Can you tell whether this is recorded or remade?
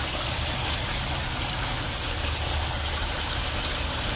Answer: recorded